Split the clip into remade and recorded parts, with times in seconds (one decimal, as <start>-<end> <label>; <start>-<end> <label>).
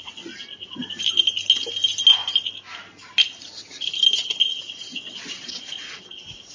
0.0-6.5 recorded